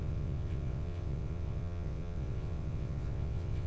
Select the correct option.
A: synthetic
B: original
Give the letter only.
A